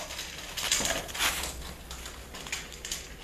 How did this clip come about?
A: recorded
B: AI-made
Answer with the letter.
A